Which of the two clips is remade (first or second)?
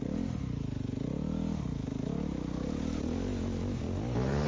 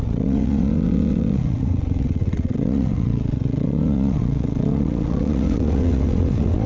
second